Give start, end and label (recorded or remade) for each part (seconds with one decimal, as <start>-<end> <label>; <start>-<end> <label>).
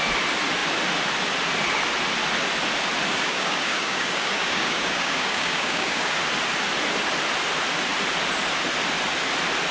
0.0-3.1 recorded; 3.1-6.1 remade; 6.1-9.7 recorded